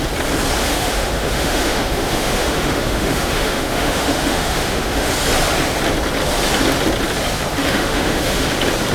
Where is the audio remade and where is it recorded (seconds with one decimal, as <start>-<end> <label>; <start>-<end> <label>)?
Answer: 0.0-0.6 recorded; 0.6-5.1 remade; 5.1-7.6 recorded; 7.6-8.5 remade; 8.5-8.9 recorded